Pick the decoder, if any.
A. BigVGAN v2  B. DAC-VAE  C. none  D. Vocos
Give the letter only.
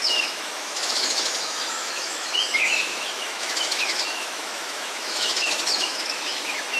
B